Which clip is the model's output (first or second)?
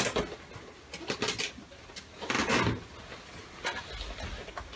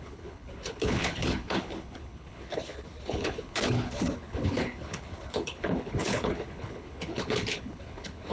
second